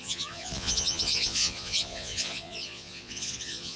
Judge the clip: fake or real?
fake